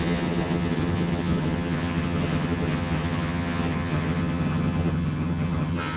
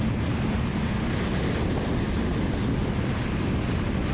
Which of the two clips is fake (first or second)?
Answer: first